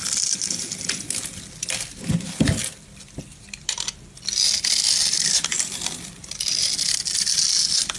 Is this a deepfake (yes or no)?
no